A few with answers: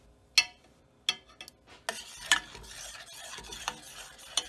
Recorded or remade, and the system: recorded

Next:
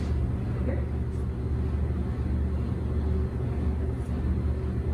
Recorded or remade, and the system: recorded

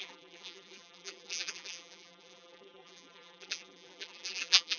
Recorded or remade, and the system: remade, vocoder, BigVGAN v2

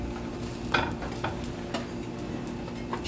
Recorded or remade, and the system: recorded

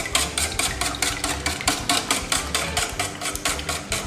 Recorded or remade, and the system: recorded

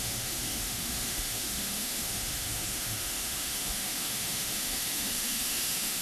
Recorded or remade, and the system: remade, autoencoder, DAC-VAE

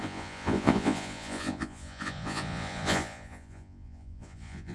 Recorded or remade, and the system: remade, vocoder, Vocos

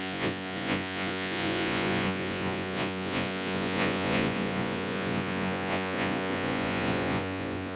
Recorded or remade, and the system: remade, vocoder, Vocos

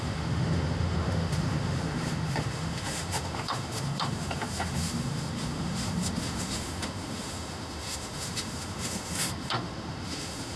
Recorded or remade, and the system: remade, autoencoder, DAC-VAE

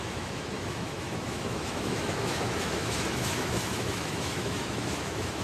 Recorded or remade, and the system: remade, autoencoder, DAC-VAE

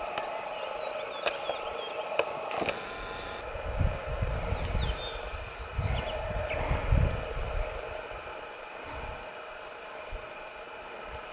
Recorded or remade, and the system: recorded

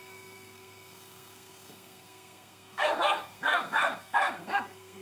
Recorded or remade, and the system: remade, codec, SNAC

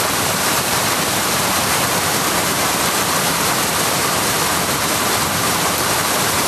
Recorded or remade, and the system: remade, vocoder, BigVGAN v2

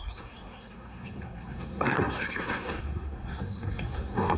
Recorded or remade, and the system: remade, codec, SNAC